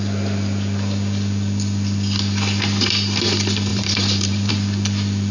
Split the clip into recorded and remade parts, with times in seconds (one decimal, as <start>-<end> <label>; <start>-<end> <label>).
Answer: 0.0-3.7 recorded; 3.7-4.5 remade; 4.5-5.3 recorded